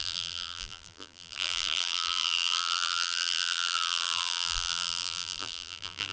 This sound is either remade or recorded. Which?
remade